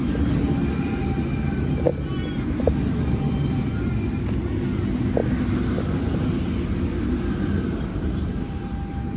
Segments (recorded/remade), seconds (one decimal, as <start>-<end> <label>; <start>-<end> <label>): 0.0-5.2 recorded; 5.2-6.9 remade; 6.9-7.9 recorded; 7.9-8.6 remade; 8.6-9.2 recorded